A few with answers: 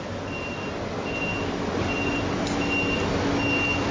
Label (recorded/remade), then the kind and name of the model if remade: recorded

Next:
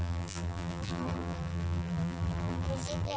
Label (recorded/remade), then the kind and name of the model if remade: remade, vocoder, BigVGAN v2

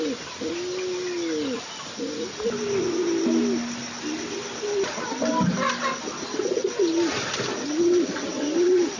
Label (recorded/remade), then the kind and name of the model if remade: recorded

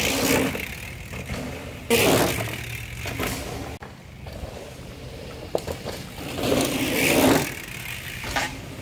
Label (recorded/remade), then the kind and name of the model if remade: recorded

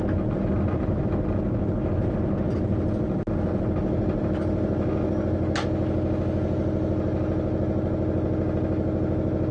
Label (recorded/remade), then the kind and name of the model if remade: recorded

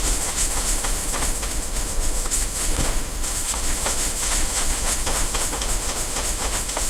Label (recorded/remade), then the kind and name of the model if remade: remade, autoencoder, DAC-VAE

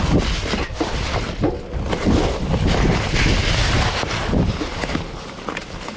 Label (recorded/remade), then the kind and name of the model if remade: recorded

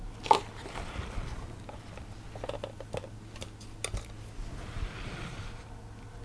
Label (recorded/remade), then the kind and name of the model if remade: recorded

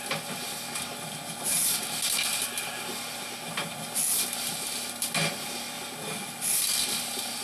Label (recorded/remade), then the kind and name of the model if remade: recorded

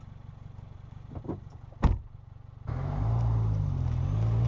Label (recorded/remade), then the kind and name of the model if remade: recorded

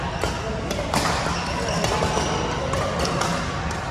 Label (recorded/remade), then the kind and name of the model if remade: recorded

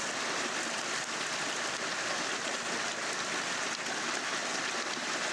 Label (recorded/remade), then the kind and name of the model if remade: recorded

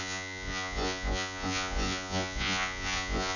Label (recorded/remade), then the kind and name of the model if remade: remade, vocoder, Vocos